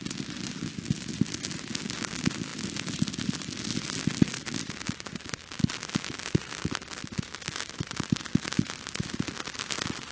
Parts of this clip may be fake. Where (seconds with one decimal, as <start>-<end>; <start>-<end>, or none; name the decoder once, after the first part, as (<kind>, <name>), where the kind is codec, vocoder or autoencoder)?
none